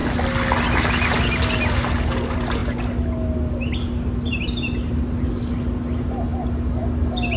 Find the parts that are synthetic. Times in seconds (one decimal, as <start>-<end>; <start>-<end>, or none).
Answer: none